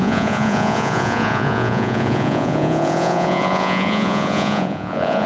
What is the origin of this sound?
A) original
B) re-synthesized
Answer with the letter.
B